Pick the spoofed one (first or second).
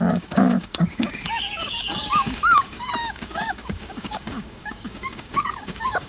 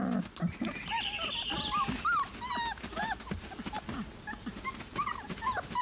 first